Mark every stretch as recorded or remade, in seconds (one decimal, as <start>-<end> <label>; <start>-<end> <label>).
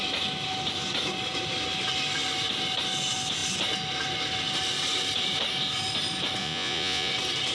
0.0-6.4 recorded; 6.4-7.1 remade; 7.1-7.5 recorded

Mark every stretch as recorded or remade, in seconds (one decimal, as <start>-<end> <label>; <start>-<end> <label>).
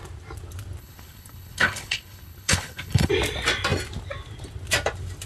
0.0-0.8 recorded; 0.8-3.1 remade; 3.1-5.3 recorded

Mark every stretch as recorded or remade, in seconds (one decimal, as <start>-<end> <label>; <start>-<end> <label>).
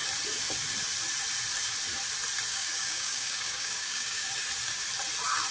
0.0-2.5 recorded; 2.5-4.3 remade; 4.3-5.5 recorded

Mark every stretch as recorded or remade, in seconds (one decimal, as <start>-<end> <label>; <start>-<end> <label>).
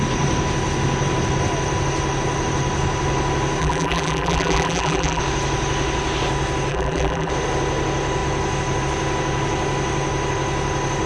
0.0-3.6 recorded; 3.6-5.2 remade; 5.2-6.7 recorded; 6.7-7.3 remade; 7.3-11.1 recorded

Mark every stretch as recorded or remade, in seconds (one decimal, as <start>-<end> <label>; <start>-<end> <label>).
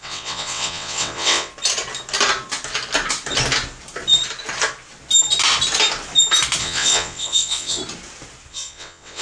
0.0-1.5 remade; 1.5-6.6 recorded; 6.6-7.8 remade; 7.8-8.5 recorded; 8.5-9.2 remade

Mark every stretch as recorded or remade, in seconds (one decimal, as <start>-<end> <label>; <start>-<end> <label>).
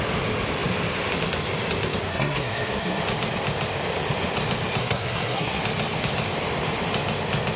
0.0-2.1 recorded; 2.1-3.0 remade; 3.0-4.8 recorded; 4.8-5.6 remade; 5.6-7.6 recorded